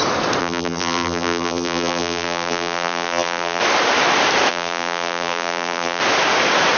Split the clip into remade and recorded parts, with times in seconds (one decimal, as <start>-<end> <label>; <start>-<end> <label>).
0.0-0.4 recorded; 0.4-3.6 remade; 3.6-4.5 recorded; 4.5-6.0 remade; 6.0-6.8 recorded